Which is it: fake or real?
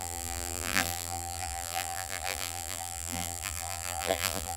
fake